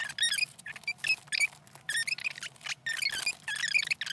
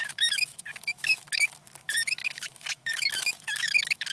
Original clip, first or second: first